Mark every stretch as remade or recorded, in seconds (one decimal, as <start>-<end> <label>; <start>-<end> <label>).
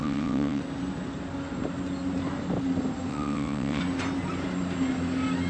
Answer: 0.0-0.6 remade; 0.6-3.1 recorded; 3.1-3.8 remade; 3.8-5.5 recorded